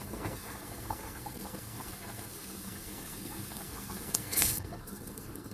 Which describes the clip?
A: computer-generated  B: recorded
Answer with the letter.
A